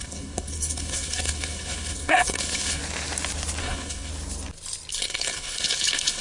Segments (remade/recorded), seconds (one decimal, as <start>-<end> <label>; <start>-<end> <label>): 0.0-2.8 remade; 2.8-3.6 recorded; 3.6-4.1 remade; 4.1-4.9 recorded; 4.9-6.2 remade